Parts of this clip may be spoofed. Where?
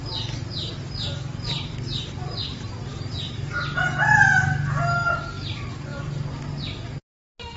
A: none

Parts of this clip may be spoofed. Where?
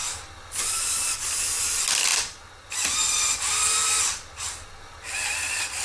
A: none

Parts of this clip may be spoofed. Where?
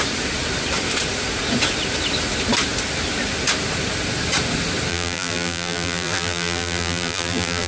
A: 4.9-7.7 (vocoder, BigVGAN v2)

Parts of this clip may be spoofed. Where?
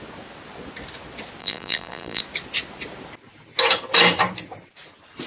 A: 1.4-2.2 (vocoder, BigVGAN v2)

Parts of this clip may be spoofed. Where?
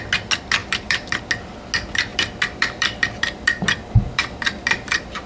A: 0.6-1.2 (vocoder, BigVGAN v2); 2.1-5.3